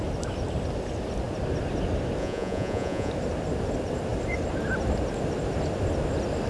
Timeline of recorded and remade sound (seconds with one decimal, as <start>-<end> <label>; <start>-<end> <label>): 0.0-2.2 recorded; 2.2-3.1 remade; 3.1-6.5 recorded